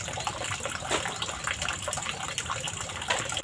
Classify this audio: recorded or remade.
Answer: recorded